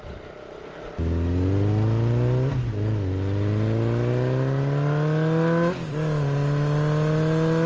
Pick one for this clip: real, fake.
real